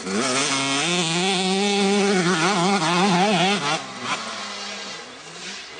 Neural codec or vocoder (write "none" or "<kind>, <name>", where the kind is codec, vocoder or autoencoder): none